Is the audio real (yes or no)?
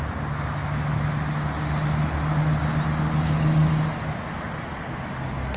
yes